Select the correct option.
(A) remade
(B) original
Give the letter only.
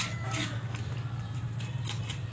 B